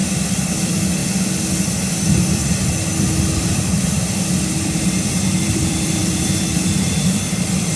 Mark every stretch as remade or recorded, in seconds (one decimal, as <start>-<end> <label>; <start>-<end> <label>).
0.0-0.6 recorded; 0.6-1.0 remade; 1.0-1.9 recorded; 1.9-2.4 remade; 2.4-3.6 recorded; 3.6-7.8 remade